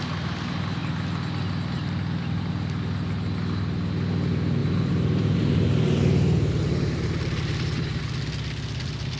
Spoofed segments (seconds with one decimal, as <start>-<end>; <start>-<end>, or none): 4.6-8.0